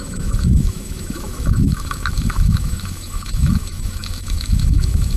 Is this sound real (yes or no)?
no